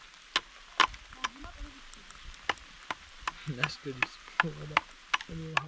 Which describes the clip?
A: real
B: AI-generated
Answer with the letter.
A